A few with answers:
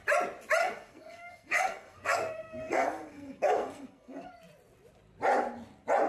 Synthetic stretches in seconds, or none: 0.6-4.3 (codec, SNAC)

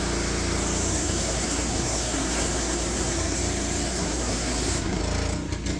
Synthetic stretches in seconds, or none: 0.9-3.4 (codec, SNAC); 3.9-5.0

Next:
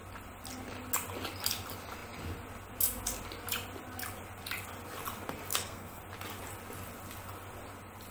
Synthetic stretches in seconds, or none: 5.5-6.0 (codec, SNAC)

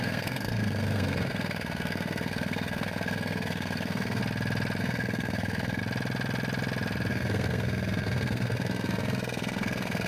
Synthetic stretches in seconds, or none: 0.0-4.2 (codec, SNAC); 4.8-5.8; 7.1-10.1